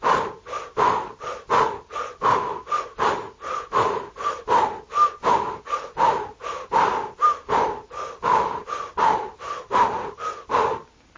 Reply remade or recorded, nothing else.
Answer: recorded